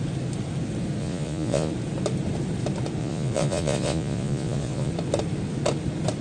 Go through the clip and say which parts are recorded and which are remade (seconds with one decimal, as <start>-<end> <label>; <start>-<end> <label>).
0.0-1.0 recorded; 1.0-1.7 remade; 1.7-3.0 recorded; 3.0-4.9 remade; 4.9-6.2 recorded